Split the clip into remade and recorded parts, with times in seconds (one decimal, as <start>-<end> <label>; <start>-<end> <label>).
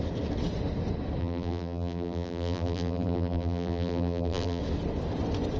0.0-1.2 recorded; 1.2-4.6 remade; 4.6-5.6 recorded